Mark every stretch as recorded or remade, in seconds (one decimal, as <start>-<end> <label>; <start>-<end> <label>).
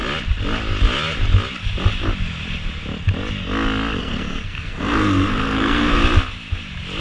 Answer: 0.0-4.0 recorded; 4.0-6.0 remade; 6.0-7.0 recorded